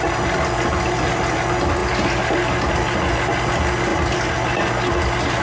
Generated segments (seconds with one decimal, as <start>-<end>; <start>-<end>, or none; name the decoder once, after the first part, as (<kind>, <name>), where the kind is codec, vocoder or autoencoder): none